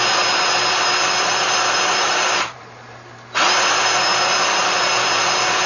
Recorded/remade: recorded